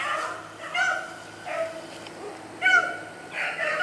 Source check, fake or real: real